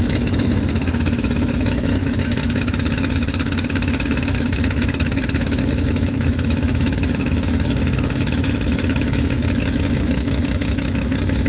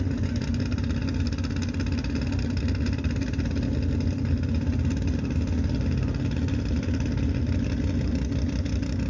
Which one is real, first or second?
second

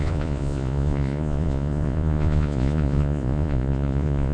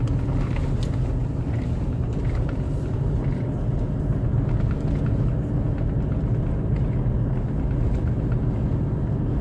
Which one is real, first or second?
second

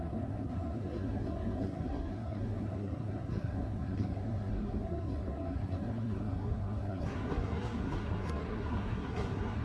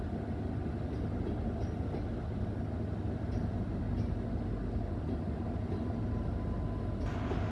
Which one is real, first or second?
second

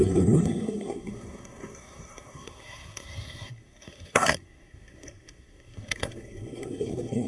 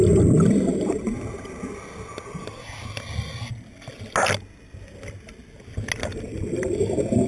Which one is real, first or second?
second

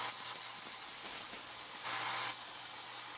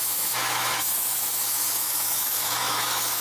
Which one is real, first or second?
first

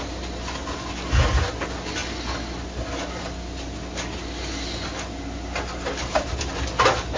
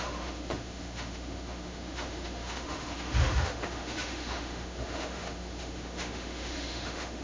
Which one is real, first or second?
first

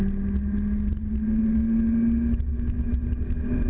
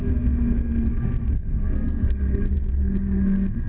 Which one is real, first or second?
first